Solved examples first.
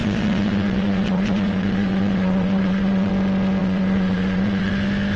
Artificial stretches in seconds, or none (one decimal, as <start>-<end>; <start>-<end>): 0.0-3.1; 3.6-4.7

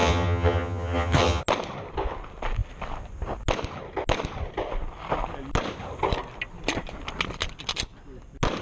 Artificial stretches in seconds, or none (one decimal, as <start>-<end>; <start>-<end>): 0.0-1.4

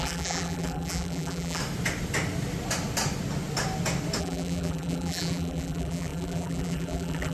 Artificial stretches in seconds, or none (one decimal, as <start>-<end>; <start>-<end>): 0.0-1.6; 4.2-7.3

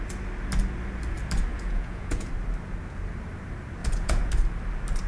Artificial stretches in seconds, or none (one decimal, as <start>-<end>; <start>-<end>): 1.5-2.3; 3.8-4.3

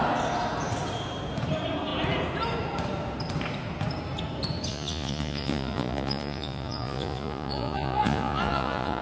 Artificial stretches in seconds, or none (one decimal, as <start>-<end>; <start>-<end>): 4.7-9.0